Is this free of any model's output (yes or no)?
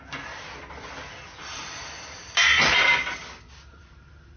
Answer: yes